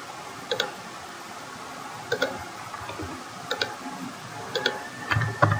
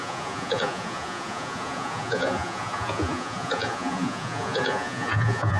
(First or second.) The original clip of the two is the first